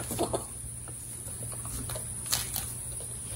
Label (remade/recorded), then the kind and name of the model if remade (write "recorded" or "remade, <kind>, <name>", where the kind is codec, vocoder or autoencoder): recorded